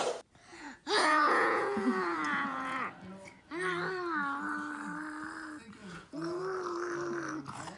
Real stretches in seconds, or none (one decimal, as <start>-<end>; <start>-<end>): 0.0-0.5; 2.9-5.8; 6.4-7.8